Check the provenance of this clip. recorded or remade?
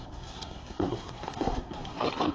remade